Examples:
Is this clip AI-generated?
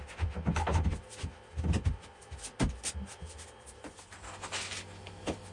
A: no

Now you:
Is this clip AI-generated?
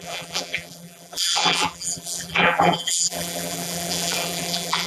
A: yes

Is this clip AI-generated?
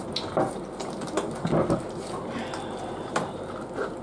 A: no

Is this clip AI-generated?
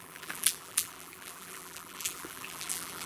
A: yes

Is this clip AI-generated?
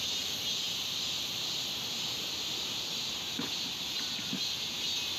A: no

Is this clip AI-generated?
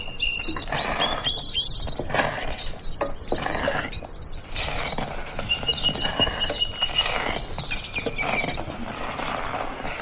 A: no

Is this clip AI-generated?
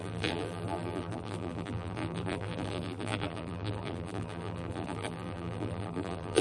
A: yes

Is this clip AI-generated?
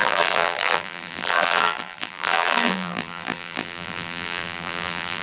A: yes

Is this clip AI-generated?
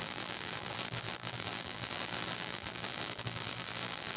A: yes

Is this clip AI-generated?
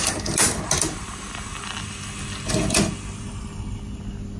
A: no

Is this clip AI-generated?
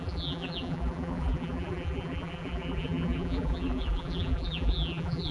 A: yes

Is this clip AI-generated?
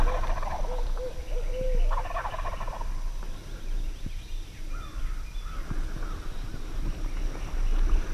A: no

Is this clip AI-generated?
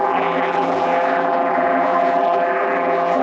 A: yes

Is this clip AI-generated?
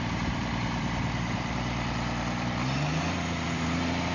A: yes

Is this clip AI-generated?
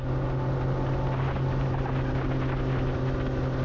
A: no